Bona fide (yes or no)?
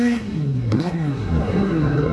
no